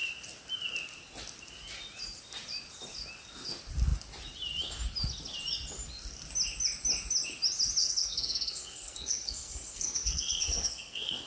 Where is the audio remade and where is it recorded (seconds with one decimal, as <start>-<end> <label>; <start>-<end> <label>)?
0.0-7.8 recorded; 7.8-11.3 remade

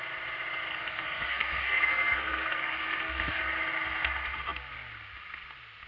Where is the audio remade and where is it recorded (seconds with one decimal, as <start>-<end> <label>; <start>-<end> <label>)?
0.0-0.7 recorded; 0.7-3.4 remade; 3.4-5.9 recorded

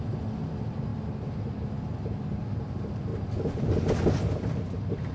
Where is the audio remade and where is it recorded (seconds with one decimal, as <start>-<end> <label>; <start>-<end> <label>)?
0.0-5.1 recorded

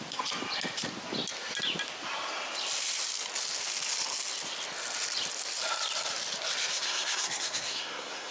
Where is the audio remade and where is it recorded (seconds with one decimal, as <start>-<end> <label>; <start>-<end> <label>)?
0.0-6.7 recorded; 6.7-8.3 remade

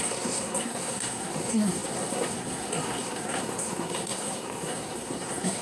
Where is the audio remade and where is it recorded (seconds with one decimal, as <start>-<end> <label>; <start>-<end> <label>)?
0.0-5.6 remade

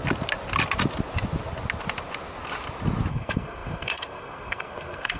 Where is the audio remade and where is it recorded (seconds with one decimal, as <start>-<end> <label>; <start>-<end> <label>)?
0.0-3.1 recorded; 3.1-5.2 remade

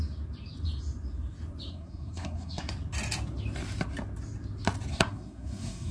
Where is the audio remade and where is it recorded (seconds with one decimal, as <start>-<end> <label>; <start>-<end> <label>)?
0.0-1.7 recorded; 1.7-2.7 remade; 2.7-4.9 recorded; 4.9-5.9 remade